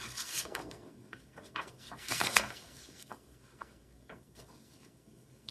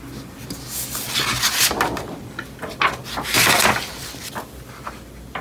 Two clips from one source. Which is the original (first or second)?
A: second